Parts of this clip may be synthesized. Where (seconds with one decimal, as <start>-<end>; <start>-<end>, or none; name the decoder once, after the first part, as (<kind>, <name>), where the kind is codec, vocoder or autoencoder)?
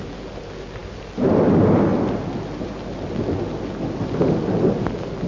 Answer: none